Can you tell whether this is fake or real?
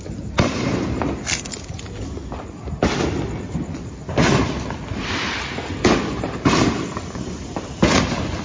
real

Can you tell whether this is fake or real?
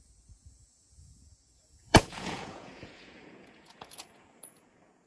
fake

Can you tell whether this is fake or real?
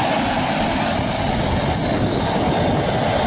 real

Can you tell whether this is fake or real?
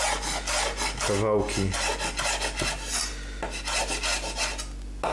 real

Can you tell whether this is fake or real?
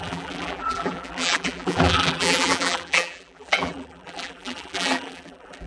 fake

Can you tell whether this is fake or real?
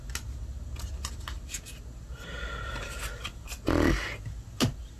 real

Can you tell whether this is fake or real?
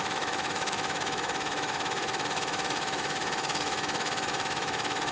fake